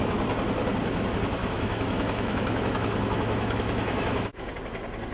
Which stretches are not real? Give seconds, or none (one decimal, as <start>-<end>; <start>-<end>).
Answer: 1.4-4.5